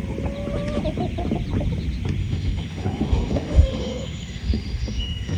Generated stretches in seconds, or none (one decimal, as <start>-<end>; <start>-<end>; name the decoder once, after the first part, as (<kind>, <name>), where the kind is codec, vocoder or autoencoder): 2.2-5.4 (autoencoder, DAC-VAE)